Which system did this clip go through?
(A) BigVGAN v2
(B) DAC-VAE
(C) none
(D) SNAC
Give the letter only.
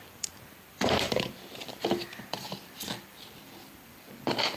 A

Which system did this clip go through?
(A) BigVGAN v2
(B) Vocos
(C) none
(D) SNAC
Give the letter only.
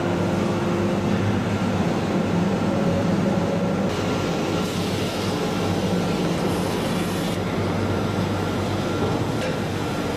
C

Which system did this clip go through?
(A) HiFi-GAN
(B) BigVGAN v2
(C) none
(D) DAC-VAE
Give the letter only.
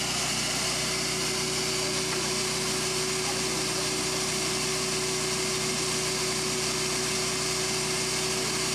C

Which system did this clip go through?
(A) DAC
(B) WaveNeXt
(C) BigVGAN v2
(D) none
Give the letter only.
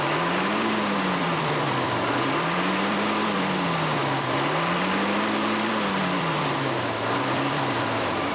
C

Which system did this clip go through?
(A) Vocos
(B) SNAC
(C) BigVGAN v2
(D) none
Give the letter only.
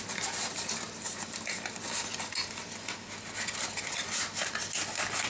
D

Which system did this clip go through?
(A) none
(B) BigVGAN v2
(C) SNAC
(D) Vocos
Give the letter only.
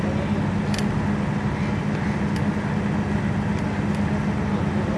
A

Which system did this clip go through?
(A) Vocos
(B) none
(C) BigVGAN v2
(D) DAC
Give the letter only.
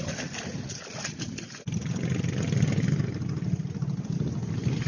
B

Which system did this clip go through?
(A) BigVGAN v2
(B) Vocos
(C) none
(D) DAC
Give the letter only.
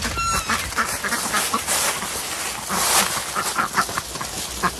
C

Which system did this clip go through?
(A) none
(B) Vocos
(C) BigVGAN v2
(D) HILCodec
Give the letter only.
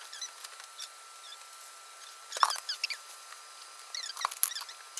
A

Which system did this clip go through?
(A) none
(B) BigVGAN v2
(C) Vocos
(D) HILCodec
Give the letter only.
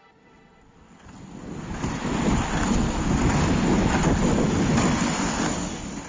A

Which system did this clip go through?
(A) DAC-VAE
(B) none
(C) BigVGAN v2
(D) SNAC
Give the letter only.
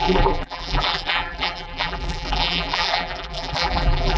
C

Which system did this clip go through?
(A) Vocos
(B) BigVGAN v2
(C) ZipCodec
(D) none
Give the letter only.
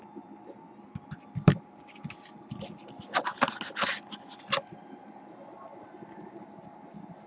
D